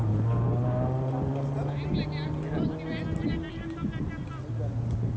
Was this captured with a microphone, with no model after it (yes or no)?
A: yes